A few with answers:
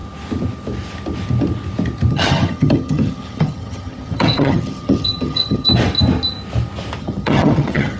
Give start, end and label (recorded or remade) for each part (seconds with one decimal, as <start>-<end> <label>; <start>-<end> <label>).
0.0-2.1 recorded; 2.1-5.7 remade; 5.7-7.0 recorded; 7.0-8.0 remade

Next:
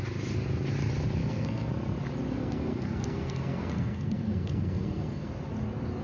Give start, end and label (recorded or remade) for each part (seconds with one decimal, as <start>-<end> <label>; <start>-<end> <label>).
0.0-1.2 recorded; 1.2-1.7 remade; 1.7-2.4 recorded; 2.4-5.3 remade; 5.3-6.0 recorded

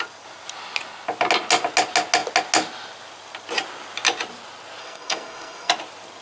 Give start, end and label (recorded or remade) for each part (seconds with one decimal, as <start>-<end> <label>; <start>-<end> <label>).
0.0-4.8 recorded; 4.8-5.7 remade; 5.7-6.2 recorded

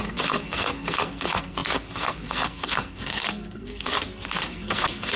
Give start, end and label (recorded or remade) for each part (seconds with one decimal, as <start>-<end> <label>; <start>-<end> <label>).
0.0-5.2 remade